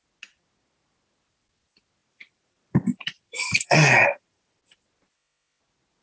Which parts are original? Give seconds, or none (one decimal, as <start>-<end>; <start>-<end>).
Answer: 0.0-2.0; 4.6-6.0